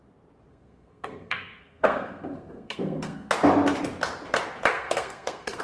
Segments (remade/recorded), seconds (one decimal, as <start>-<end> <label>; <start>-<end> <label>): 0.0-0.5 recorded; 0.5-3.3 remade; 3.3-4.7 recorded; 4.7-5.6 remade